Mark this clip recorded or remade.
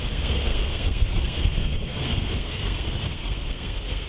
remade